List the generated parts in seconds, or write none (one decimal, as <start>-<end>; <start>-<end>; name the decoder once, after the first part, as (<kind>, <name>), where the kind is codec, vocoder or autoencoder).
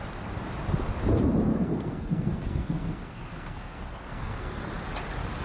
1.5-4.7 (codec, SNAC)